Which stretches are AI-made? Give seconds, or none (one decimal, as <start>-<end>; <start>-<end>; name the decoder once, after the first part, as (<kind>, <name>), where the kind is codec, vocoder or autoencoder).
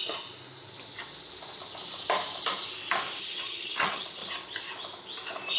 3.2-4.2 (vocoder, HiFi-GAN)